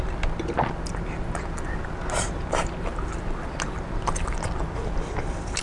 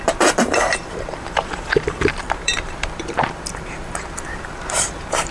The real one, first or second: first